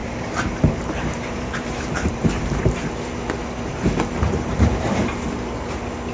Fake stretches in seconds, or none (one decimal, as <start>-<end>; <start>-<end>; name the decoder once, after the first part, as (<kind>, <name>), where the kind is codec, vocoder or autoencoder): 0.0-2.9 (vocoder, BigVGAN v2)